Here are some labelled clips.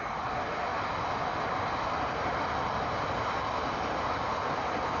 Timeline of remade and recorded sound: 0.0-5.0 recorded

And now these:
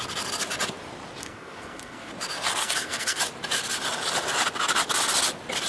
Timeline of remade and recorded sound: 0.0-1.2 recorded; 1.2-2.1 remade; 2.1-2.6 recorded; 2.6-3.2 remade; 3.2-5.7 recorded

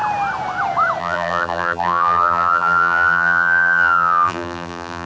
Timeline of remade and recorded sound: 0.0-1.0 recorded; 1.0-5.1 remade

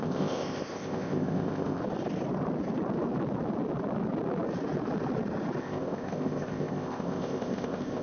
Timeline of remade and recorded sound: 0.0-1.8 remade; 1.8-5.6 recorded; 5.6-8.0 remade

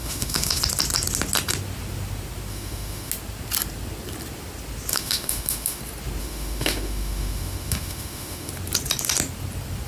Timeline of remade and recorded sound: 0.0-0.6 remade; 0.6-2.5 recorded; 2.5-3.1 remade; 3.1-4.9 recorded; 4.9-5.8 remade; 5.8-6.2 recorded; 6.2-8.5 remade; 8.5-9.9 recorded

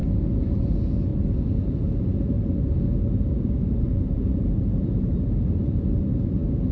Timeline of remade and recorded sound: 0.0-3.6 recorded; 3.6-6.0 remade; 6.0-6.7 recorded